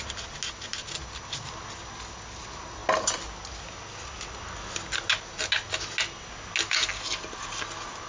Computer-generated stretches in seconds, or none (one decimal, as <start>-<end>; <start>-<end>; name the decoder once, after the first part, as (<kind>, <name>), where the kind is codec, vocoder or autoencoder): none